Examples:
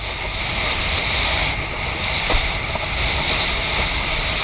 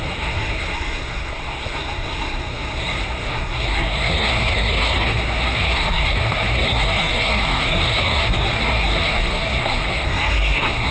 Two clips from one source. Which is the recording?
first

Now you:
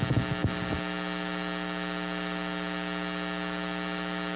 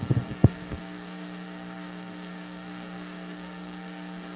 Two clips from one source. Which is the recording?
first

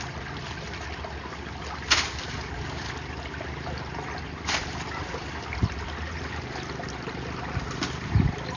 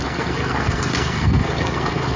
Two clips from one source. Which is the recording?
first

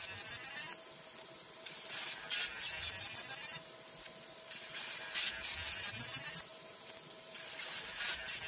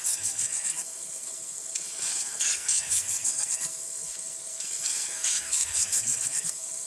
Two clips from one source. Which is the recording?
first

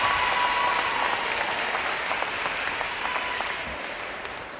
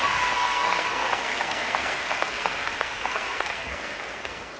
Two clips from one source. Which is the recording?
first